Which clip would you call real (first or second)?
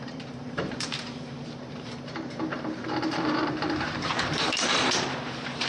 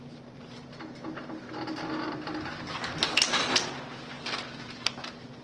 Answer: second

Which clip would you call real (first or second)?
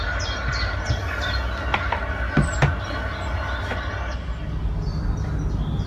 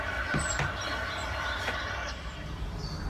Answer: first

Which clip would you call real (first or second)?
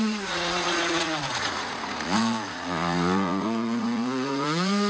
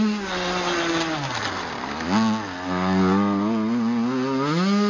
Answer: second